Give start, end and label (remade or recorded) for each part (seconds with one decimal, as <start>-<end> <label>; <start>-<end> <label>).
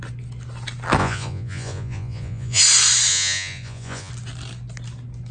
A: 0.0-1.0 recorded; 1.0-2.6 remade; 2.6-3.1 recorded; 3.1-4.1 remade; 4.1-5.3 recorded